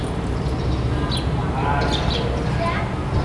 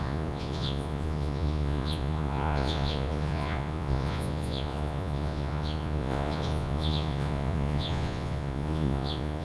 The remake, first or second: second